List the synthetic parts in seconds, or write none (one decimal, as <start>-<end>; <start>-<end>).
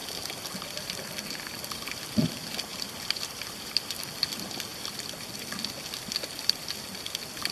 0.0-2.0; 2.7-4.0; 4.7-5.6